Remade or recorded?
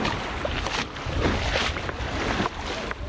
recorded